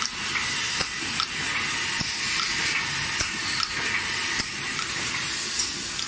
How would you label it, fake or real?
real